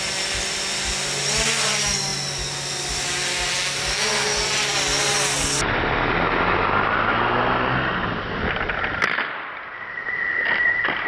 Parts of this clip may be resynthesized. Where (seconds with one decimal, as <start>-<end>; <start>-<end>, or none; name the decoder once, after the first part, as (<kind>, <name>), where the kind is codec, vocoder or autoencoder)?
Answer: none